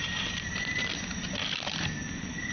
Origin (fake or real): real